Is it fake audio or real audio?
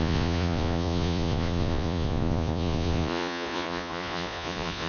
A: fake